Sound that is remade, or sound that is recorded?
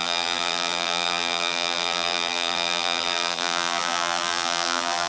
remade